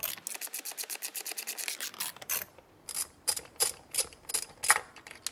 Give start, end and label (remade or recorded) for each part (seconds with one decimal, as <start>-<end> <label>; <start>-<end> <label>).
0.0-1.1 recorded; 1.1-4.3 remade; 4.3-5.3 recorded